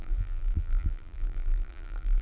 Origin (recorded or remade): remade